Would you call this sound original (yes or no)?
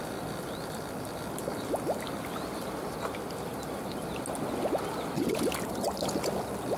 yes